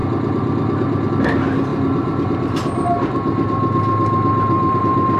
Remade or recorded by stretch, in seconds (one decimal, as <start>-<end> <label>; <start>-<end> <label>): 0.0-5.2 recorded